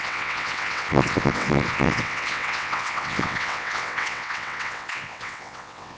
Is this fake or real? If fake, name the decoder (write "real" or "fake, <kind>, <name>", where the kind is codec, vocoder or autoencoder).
fake, vocoder, WaveNeXt